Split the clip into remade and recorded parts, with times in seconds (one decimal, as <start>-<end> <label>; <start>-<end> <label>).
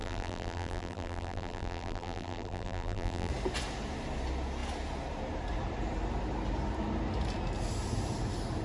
0.0-3.3 remade; 3.3-8.6 recorded